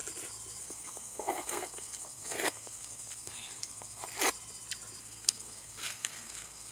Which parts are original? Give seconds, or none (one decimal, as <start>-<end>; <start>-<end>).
0.0-0.6; 4.0-5.0